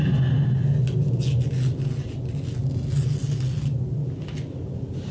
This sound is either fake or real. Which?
real